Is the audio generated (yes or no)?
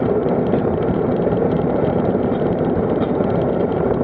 yes